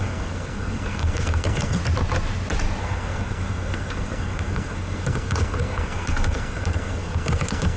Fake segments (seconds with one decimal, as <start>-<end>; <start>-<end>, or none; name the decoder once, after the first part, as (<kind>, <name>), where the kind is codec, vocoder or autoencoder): 0.0-1.8 (codec, SNAC); 2.8-7.8